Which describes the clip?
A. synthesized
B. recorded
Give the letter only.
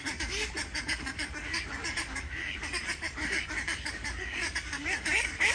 A